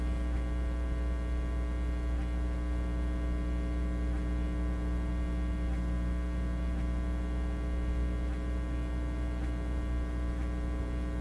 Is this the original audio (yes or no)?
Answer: yes